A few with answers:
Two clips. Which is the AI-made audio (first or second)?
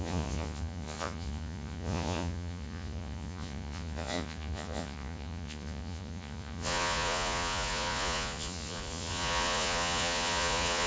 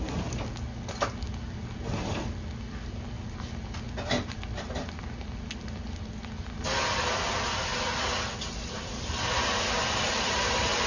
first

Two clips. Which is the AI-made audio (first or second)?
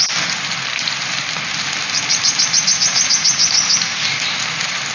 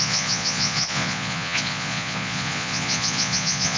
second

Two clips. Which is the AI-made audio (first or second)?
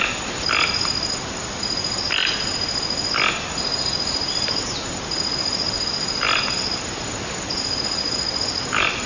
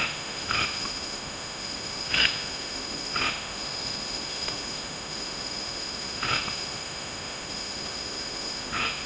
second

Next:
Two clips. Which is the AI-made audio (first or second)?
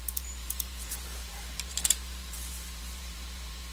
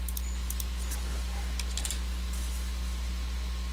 first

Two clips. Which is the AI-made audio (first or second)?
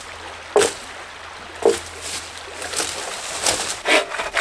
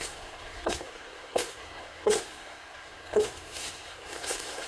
second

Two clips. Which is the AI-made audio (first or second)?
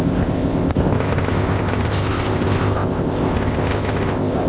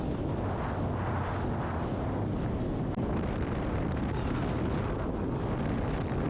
first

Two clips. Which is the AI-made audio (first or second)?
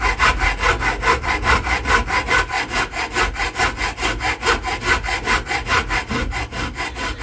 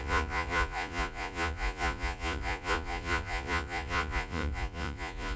second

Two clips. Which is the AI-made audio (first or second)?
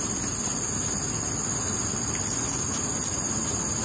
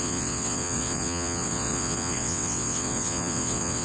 second